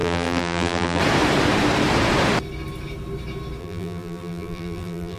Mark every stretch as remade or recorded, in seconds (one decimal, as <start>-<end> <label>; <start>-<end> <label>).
0.0-1.0 remade; 1.0-3.6 recorded; 3.6-5.2 remade